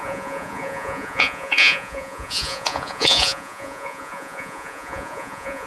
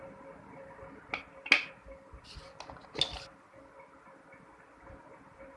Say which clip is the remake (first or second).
first